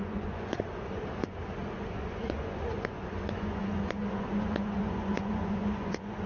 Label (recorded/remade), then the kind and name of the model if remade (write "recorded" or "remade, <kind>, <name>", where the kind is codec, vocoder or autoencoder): remade, vocoder, Vocos